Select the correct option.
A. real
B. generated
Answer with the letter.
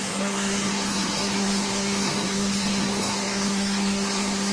B